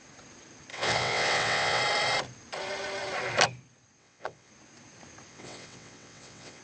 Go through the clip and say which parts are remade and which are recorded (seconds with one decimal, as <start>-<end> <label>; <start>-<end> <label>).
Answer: 0.0-0.7 recorded; 0.7-1.8 remade; 1.8-4.0 recorded; 4.0-4.5 remade; 4.5-5.3 recorded; 5.3-6.6 remade